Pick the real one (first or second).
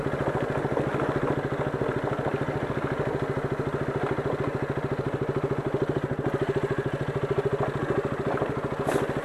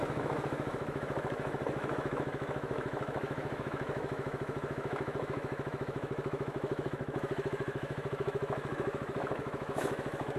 first